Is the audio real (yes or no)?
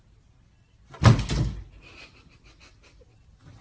yes